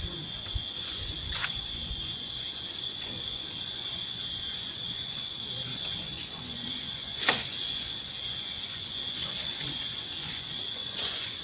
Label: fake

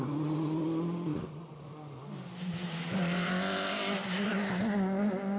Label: real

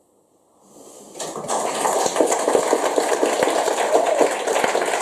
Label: real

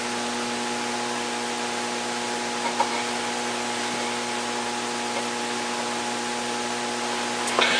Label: real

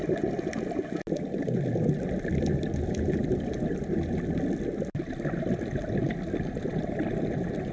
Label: real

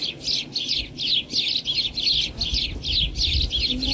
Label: real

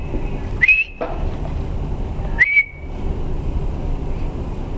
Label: real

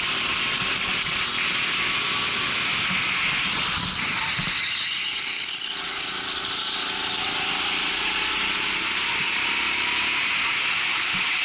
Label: real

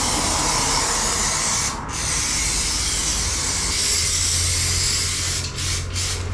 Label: real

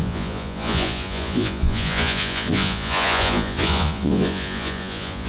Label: fake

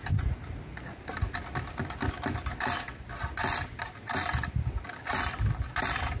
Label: real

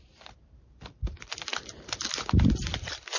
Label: real